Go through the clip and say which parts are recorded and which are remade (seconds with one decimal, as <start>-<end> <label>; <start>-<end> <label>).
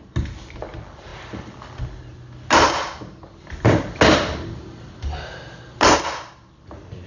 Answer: 0.0-7.1 recorded